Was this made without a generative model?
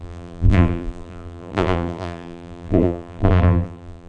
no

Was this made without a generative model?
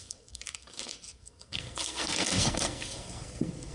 no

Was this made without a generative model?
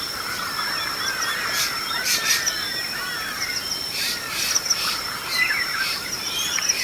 no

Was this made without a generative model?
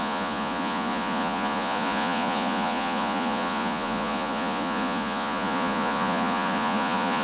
no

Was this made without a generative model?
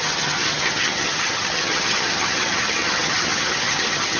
no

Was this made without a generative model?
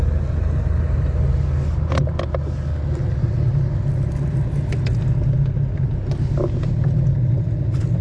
yes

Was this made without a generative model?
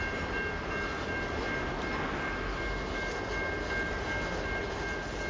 yes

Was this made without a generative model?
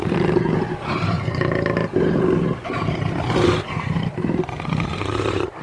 no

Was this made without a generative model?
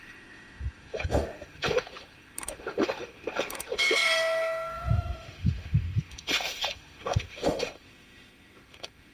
no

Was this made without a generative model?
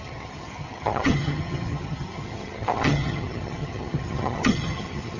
no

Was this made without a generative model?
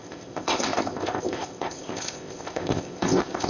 no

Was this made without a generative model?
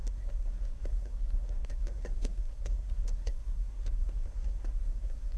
no